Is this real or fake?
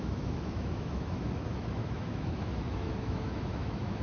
fake